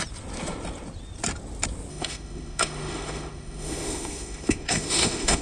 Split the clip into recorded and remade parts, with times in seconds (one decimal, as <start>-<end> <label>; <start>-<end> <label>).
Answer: 0.0-1.9 recorded; 1.9-5.4 remade